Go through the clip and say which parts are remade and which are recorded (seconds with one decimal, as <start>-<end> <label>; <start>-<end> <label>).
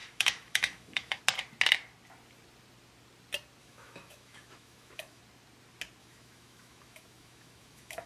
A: 0.0-1.2 remade; 1.2-3.6 recorded; 3.6-5.2 remade; 5.2-6.0 recorded; 6.0-8.1 remade